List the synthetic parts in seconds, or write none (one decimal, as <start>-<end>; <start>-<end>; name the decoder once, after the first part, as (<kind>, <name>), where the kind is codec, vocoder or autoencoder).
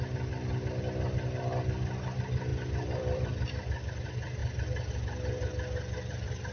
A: 2.5-3.3 (vocoder, BigVGAN v2)